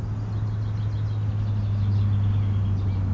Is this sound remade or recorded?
recorded